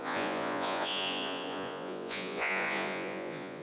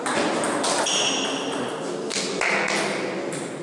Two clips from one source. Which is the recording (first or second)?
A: second